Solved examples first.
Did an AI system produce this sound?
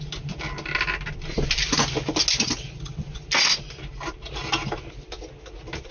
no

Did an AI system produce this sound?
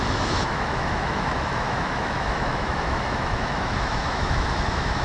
yes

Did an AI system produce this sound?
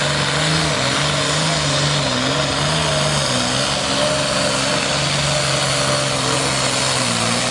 no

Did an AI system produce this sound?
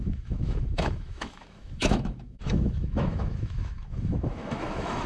yes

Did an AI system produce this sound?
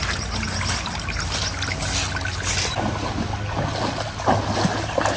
no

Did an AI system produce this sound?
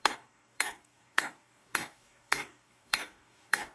yes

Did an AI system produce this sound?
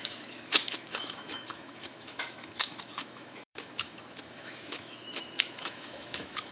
yes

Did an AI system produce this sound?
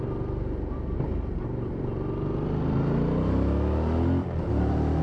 no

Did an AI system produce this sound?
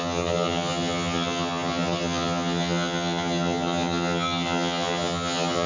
yes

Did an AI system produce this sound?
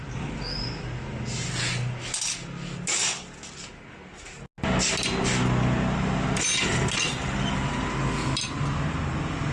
no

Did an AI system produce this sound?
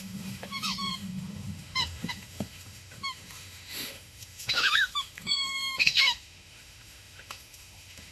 yes